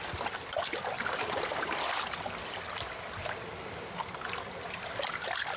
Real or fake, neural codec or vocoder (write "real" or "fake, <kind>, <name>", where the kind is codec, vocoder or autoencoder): fake, vocoder, BigVGAN v2